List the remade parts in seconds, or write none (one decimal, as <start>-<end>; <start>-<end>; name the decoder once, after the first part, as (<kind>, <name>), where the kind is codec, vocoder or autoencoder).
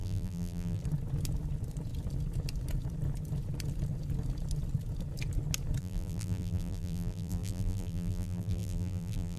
0.0-0.8 (vocoder, BigVGAN v2); 5.8-9.4